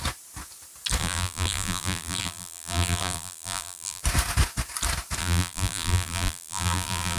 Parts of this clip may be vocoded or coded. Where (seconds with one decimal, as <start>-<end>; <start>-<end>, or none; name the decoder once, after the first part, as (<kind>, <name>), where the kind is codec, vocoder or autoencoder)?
1.0-4.0 (vocoder, BigVGAN v2); 5.2-7.2